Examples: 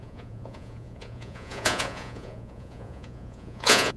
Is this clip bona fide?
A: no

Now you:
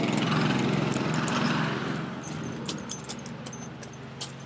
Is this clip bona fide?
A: yes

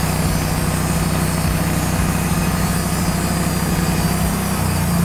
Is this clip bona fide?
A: yes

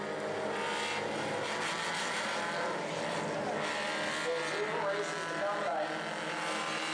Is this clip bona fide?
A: yes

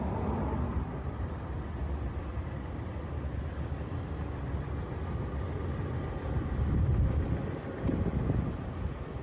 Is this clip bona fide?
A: yes